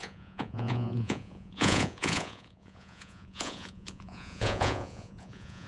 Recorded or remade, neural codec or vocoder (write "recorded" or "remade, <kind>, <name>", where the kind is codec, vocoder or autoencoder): remade, vocoder, Vocos